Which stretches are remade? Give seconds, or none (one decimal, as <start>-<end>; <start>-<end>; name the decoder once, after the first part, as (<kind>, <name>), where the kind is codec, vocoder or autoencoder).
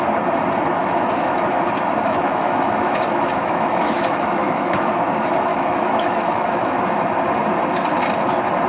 0.8-1.6 (autoencoder, DAC-VAE); 2.0-4.9; 5.5-6.8